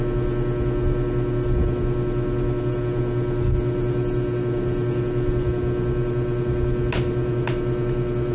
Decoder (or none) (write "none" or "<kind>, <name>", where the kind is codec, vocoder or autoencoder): none